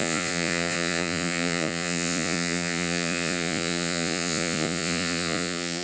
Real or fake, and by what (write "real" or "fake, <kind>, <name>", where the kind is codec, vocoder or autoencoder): fake, vocoder, Vocos